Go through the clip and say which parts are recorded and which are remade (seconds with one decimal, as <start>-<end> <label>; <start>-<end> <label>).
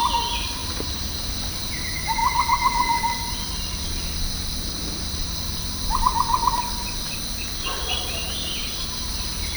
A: 0.0-0.6 recorded; 0.6-1.3 remade; 1.3-8.2 recorded; 8.2-9.1 remade; 9.1-9.6 recorded